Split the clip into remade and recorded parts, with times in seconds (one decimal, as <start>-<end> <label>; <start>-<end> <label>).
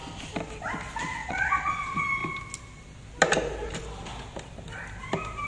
0.0-1.2 recorded; 1.2-1.7 remade; 1.7-5.5 recorded